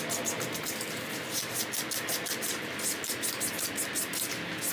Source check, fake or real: real